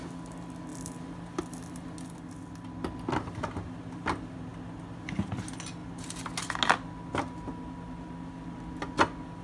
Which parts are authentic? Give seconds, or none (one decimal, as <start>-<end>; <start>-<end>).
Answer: 0.0-9.4